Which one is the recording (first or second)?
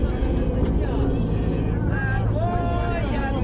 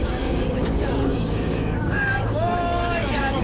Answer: first